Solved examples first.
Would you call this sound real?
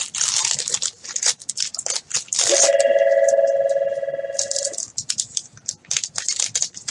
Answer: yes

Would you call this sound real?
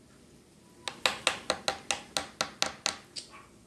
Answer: yes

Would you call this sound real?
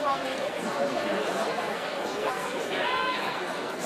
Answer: no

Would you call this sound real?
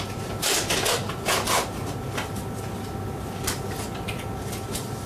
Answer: yes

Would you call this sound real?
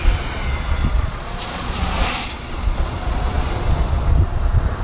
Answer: no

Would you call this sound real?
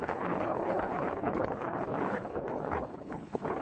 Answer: no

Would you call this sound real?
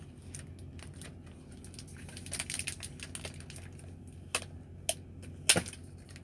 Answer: yes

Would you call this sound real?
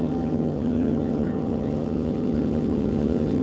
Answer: no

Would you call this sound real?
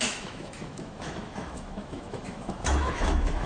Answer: no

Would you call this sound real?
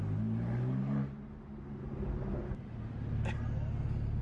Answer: yes